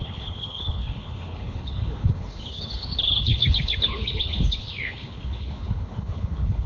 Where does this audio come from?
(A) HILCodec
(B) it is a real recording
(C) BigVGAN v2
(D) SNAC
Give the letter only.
A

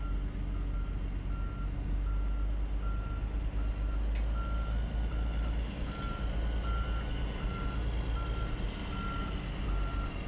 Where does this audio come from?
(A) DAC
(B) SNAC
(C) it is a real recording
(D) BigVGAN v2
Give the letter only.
C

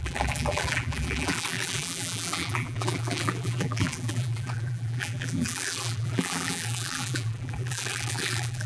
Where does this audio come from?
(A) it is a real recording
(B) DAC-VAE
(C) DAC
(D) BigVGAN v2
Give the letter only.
D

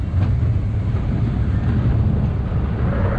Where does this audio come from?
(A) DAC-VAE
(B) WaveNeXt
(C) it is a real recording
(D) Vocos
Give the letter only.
C